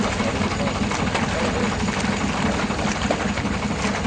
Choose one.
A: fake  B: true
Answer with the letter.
B